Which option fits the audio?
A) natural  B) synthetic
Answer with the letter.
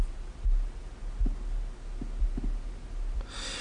A